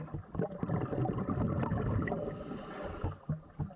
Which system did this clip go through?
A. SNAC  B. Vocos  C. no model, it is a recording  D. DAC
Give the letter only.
C